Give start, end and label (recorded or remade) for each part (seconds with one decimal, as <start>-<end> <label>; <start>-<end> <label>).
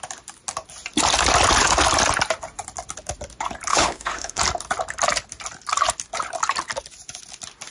0.0-3.7 recorded; 3.7-4.4 remade; 4.4-7.7 recorded